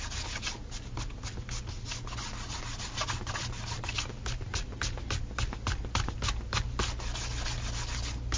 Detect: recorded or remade recorded